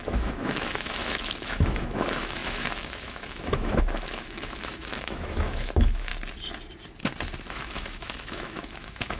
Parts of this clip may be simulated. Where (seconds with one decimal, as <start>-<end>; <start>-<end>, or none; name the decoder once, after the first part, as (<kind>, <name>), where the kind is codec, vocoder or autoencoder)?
0.0-6.1 (autoencoder, DAC-VAE); 7.5-9.2